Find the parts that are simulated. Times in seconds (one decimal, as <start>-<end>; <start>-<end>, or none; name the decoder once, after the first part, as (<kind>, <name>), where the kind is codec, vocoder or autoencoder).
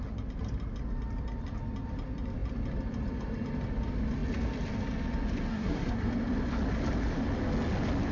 5.5-6.1 (codec, SNAC)